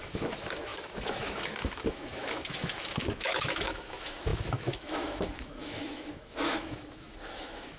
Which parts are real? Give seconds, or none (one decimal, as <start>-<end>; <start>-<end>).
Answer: none